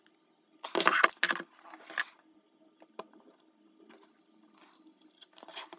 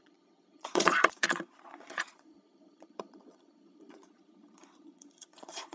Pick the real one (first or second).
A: first